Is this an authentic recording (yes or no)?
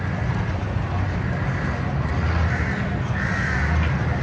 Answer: yes